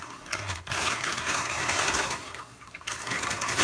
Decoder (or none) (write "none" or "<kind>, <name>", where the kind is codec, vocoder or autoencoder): codec, SNAC